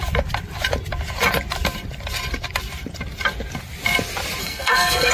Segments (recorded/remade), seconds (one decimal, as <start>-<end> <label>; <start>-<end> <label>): 0.0-4.4 recorded; 4.4-5.1 remade